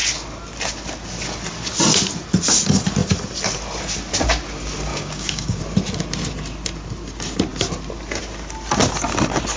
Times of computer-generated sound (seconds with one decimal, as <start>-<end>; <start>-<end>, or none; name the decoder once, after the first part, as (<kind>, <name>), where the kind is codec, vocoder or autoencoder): 4.9-5.6 (codec, DAC)